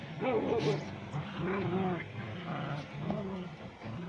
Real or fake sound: real